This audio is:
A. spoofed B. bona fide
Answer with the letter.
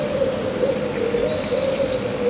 B